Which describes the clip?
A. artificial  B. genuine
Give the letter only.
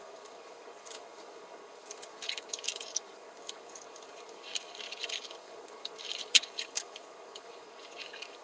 A